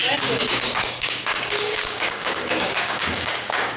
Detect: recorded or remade remade